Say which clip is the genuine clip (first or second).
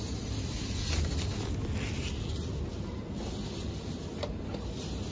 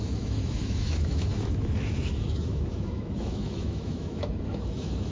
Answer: first